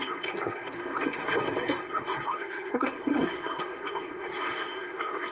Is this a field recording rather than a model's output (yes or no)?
no